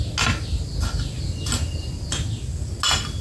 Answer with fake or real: real